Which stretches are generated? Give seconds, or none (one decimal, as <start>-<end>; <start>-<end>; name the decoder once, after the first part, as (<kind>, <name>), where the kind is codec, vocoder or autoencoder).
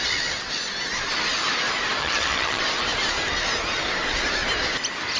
2.0-2.6 (vocoder, HiFi-GAN)